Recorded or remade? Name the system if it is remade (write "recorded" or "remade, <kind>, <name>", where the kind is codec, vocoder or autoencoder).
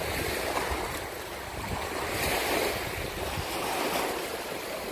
recorded